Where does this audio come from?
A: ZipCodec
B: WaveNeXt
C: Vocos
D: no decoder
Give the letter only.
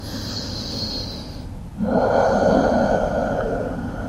D